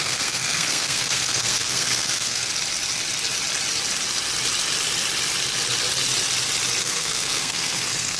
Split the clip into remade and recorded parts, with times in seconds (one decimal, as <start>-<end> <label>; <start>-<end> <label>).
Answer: 0.0-2.5 remade; 2.5-6.8 recorded; 6.8-8.2 remade